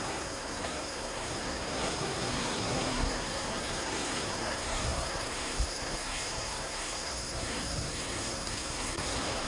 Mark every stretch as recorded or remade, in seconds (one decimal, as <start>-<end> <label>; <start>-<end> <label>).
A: 0.0-9.5 remade